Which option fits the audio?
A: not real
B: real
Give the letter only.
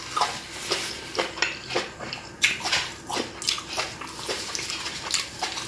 B